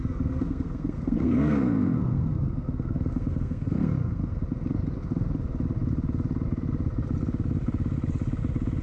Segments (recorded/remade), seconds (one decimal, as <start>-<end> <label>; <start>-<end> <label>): 0.0-4.4 remade; 4.4-8.8 recorded